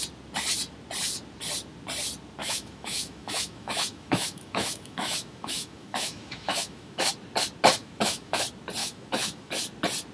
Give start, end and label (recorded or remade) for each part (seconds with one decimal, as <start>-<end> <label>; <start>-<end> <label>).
0.0-2.4 recorded; 2.4-7.1 remade; 7.1-7.8 recorded; 7.8-8.4 remade; 8.4-8.8 recorded; 8.8-9.5 remade; 9.5-10.1 recorded